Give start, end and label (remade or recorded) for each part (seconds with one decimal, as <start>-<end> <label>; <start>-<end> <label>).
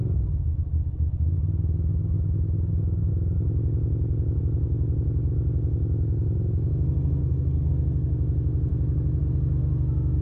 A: 0.0-7.2 recorded; 7.2-7.7 remade; 7.7-10.2 recorded